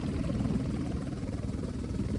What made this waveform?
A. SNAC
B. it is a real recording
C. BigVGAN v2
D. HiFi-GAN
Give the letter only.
C